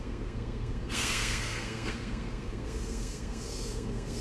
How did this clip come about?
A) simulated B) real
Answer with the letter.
A